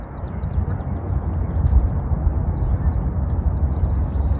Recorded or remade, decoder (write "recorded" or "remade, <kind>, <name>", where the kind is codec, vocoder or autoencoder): recorded